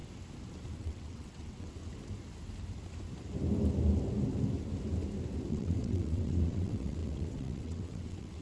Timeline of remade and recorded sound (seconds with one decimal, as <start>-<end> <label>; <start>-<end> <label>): 0.0-0.8 recorded; 0.8-1.8 remade; 1.8-5.5 recorded; 5.5-8.4 remade